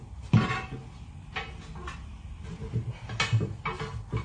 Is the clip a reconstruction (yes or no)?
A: no